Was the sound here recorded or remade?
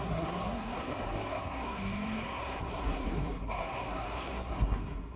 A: remade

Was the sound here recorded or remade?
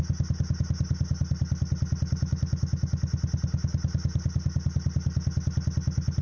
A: recorded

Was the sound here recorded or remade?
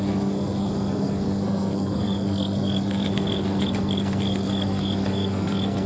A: remade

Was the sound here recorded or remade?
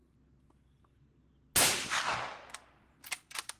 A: recorded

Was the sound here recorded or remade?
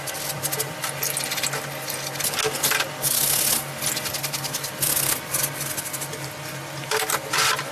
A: recorded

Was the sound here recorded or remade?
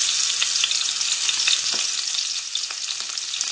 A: recorded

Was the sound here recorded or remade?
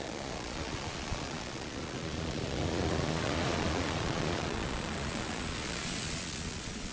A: remade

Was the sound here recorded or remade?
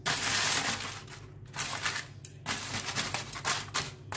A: recorded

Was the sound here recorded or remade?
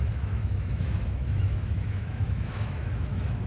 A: remade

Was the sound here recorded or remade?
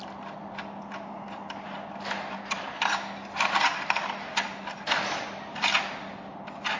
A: recorded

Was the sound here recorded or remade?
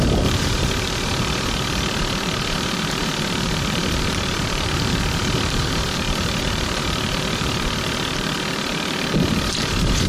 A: remade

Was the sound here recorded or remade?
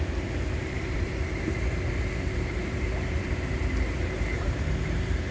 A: remade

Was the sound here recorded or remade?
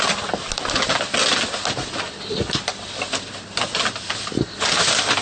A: recorded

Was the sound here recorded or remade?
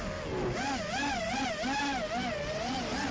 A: recorded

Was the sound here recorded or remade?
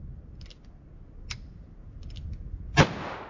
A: recorded